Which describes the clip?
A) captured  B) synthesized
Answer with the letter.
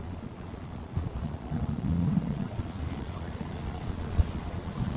B